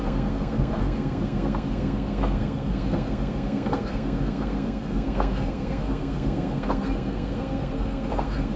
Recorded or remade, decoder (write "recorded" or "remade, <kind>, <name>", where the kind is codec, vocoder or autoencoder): remade, codec, SNAC